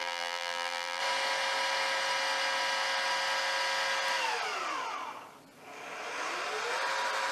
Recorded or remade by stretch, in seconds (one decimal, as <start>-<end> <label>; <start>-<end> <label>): 0.0-1.0 remade; 1.0-7.3 recorded

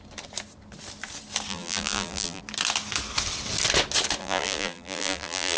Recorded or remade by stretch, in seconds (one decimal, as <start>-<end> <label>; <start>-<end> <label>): 0.0-1.5 recorded; 1.5-2.4 remade; 2.4-4.2 recorded; 4.2-5.6 remade

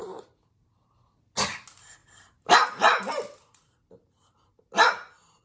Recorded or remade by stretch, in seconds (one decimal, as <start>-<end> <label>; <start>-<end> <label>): 0.0-0.6 remade; 0.6-2.0 recorded; 2.0-4.5 remade; 4.5-5.4 recorded

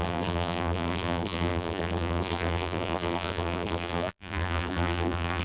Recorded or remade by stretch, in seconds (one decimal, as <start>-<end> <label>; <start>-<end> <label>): 0.0-5.4 remade

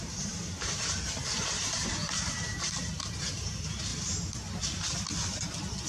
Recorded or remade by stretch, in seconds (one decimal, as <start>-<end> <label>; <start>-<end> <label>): 0.0-3.9 remade; 3.9-5.9 recorded

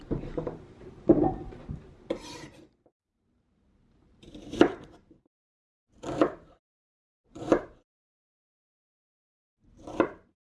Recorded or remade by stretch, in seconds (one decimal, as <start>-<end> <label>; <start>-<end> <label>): 0.0-5.5 remade; 5.5-6.4 recorded; 6.4-10.5 remade

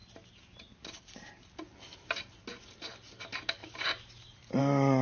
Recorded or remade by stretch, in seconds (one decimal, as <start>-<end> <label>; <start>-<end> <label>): 0.0-3.6 recorded; 3.6-4.6 remade; 4.6-5.0 recorded

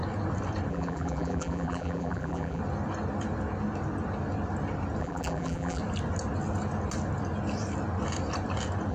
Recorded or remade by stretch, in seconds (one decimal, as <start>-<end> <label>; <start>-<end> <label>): 0.0-0.7 recorded; 0.7-2.6 remade; 2.6-5.0 recorded; 5.0-5.8 remade; 5.8-8.9 recorded